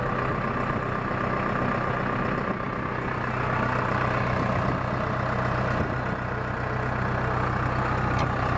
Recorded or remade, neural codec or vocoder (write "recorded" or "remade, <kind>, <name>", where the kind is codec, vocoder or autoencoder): recorded